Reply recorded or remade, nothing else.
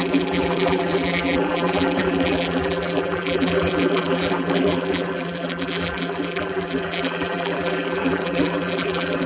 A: remade